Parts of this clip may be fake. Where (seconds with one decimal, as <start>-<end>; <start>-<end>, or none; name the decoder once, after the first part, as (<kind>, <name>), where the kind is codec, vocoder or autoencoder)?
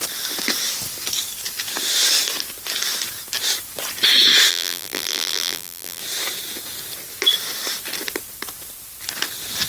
4.5-6.0 (vocoder, BigVGAN v2)